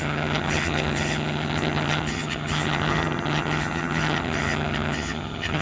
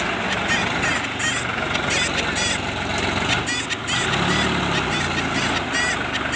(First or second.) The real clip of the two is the second